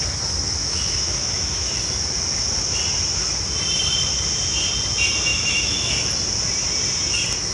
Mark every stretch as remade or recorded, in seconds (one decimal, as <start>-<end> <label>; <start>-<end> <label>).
0.0-0.6 recorded; 0.6-1.8 remade; 1.8-5.3 recorded; 5.3-6.1 remade; 6.1-7.5 recorded

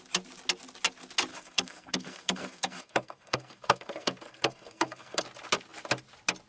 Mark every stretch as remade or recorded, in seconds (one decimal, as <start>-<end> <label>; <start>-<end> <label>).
0.0-1.3 recorded; 1.3-5.2 remade; 5.2-6.5 recorded

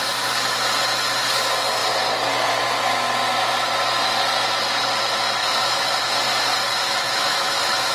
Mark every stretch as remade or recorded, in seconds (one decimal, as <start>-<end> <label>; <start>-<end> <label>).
0.0-5.4 recorded; 5.4-5.9 remade; 5.9-6.8 recorded; 6.8-7.9 remade

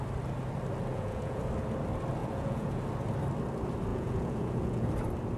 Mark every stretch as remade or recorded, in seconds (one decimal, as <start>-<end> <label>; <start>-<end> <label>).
0.0-0.9 recorded; 0.9-1.4 remade; 1.4-2.2 recorded; 2.2-2.8 remade; 2.8-3.9 recorded; 3.9-4.9 remade; 4.9-5.4 recorded

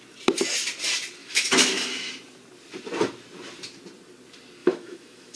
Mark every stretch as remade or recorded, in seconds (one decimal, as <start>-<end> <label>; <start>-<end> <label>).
0.0-1.2 recorded; 1.2-2.1 remade; 2.1-4.6 recorded; 4.6-5.4 remade

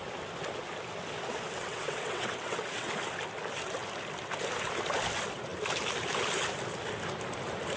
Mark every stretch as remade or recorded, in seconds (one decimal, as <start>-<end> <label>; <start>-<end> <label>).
0.0-1.6 recorded; 1.6-2.9 remade; 2.9-7.8 recorded

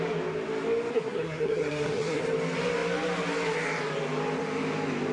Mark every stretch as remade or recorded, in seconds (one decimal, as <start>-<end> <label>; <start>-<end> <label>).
0.0-0.9 recorded; 0.9-2.2 remade; 2.2-5.1 recorded

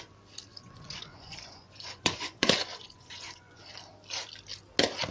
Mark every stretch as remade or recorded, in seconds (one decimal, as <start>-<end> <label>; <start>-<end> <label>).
0.0-0.5 recorded; 0.5-3.6 remade; 3.6-5.1 recorded